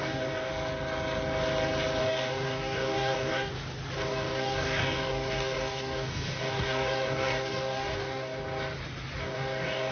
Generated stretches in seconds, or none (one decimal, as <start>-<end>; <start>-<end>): 0.0-0.5; 2.0-3.5; 4.1-8.4; 9.2-9.9